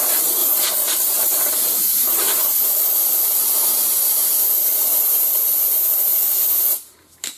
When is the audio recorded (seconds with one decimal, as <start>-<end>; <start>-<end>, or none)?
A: 0.4-1.4